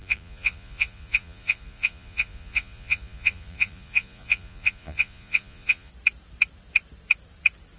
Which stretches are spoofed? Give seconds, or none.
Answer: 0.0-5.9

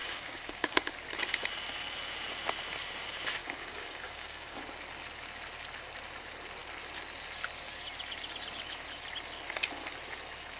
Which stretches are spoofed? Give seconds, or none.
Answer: 0.0-0.9; 3.4-4.6

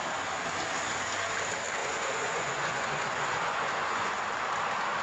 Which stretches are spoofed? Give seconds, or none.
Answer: 1.8-4.2

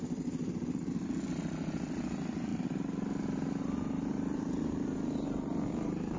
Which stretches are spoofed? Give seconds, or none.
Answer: none

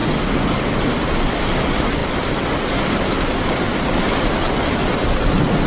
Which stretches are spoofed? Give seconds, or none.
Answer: 2.0-3.4

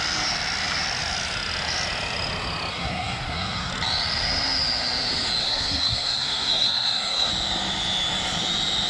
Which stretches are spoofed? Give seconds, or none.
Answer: 2.7-3.7; 5.4-7.3

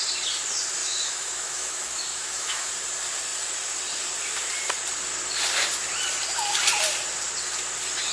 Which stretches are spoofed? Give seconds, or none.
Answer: 0.8-2.7